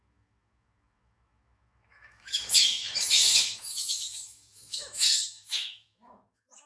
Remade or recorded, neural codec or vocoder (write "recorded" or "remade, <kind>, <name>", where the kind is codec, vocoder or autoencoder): remade, autoencoder, DAC-VAE